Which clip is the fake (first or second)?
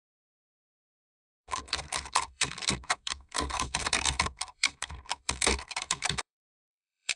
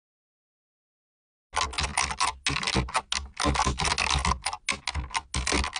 first